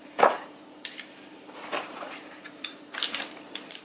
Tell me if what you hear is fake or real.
fake